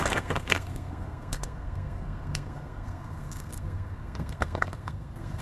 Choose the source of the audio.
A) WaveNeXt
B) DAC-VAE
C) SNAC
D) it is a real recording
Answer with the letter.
C